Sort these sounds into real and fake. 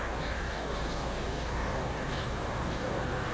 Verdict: fake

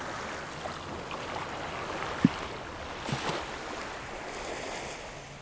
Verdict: real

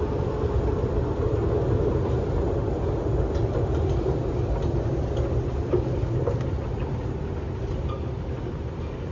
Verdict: real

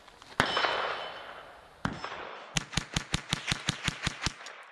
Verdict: real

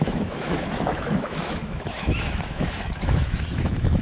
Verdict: fake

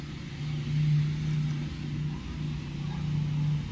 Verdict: real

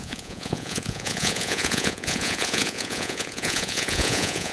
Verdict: fake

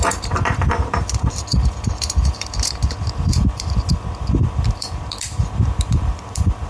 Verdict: fake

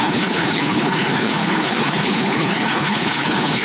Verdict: fake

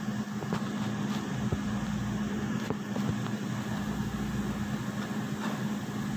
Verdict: real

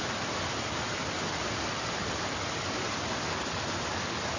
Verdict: real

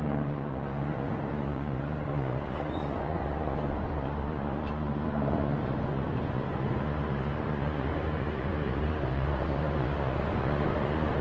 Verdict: fake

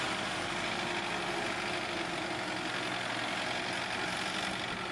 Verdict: real